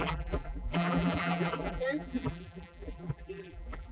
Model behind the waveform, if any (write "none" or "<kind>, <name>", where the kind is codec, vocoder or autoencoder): vocoder, BigVGAN v2